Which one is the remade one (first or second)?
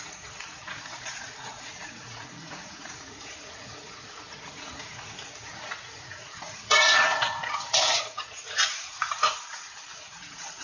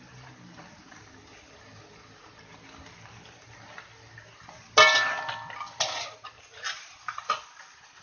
first